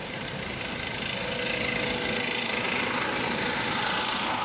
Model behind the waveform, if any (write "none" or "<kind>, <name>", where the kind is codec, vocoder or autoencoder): none